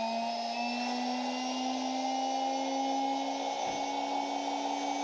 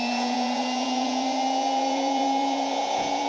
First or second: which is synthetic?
second